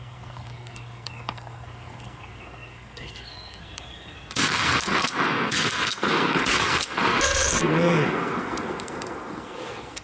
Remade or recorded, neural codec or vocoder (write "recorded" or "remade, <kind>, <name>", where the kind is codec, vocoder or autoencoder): remade, codec, SNAC